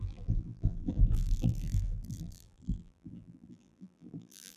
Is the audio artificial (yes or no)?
yes